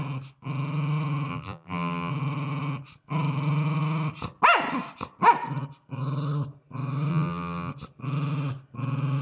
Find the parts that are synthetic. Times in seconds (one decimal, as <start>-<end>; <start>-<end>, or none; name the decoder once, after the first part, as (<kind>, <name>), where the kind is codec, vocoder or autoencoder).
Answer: 1.3-2.1 (vocoder, BigVGAN v2); 7.1-7.7